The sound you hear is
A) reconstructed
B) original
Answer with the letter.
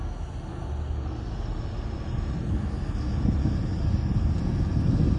B